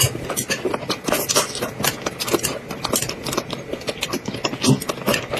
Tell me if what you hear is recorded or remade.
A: recorded